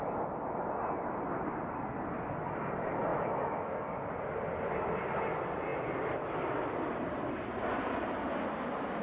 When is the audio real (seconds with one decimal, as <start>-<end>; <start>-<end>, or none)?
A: 0.0-3.1; 3.8-9.0